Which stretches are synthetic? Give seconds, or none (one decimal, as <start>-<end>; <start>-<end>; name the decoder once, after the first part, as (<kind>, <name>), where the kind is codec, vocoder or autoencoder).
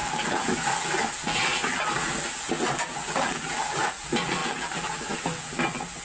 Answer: 0.0-6.0 (vocoder, BigVGAN v2)